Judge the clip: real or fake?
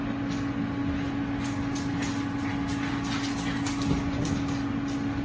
real